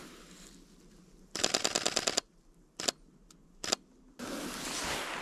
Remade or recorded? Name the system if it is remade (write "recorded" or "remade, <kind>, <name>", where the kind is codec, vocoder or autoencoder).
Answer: recorded